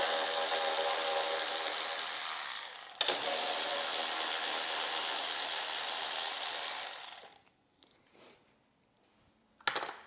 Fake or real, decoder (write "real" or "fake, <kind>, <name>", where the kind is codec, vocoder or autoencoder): real